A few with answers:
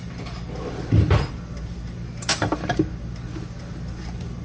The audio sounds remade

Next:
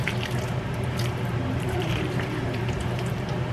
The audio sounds remade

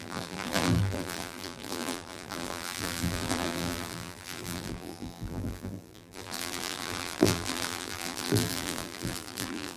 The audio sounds remade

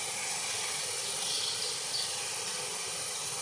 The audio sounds remade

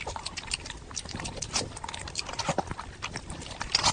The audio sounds recorded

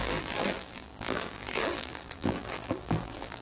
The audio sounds remade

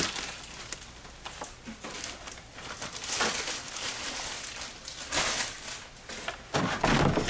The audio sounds recorded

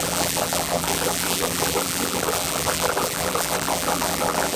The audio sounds remade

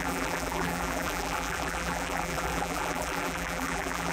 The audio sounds remade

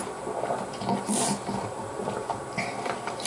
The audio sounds remade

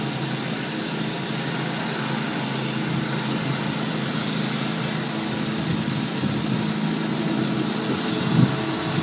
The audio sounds recorded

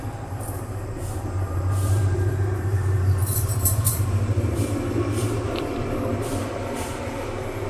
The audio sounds remade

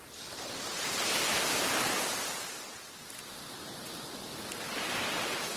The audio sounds recorded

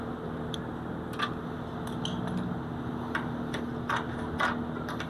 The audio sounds recorded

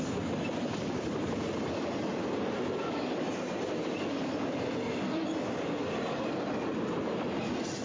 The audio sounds recorded